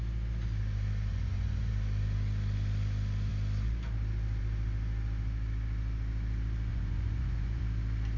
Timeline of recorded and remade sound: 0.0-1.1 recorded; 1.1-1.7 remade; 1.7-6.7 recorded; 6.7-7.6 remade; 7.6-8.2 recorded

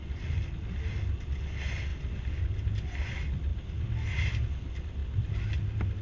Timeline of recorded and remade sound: 0.0-6.0 recorded

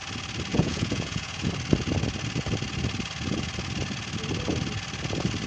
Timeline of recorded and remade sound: 0.0-0.5 recorded; 0.5-1.5 remade; 1.5-5.5 recorded

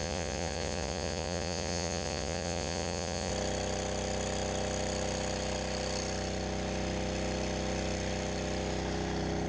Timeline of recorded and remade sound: 0.0-3.3 remade; 3.3-9.5 recorded

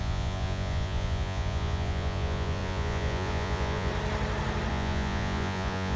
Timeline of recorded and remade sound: 0.0-3.9 remade; 3.9-4.7 recorded; 4.7-6.0 remade

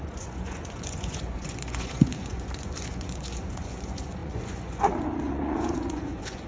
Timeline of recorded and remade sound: 0.0-6.5 remade

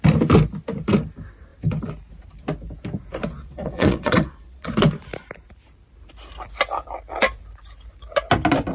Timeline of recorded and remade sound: 0.0-3.3 recorded; 3.3-4.7 remade; 4.7-8.7 recorded

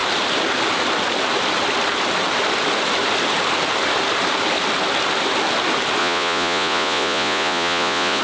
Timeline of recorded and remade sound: 0.0-6.0 recorded; 6.0-8.2 remade